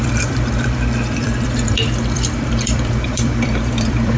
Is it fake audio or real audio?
fake